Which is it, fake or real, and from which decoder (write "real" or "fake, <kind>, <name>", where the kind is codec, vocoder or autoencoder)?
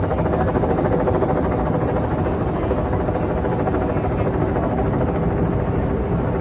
real